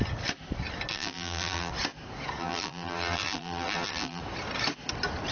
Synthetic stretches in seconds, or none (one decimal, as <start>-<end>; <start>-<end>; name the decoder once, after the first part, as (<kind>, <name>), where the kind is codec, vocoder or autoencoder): 0.9-1.7 (vocoder, BigVGAN v2); 2.4-4.2